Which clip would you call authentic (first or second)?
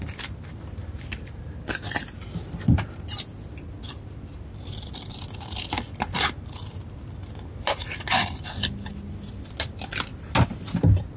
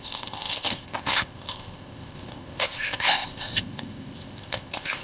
first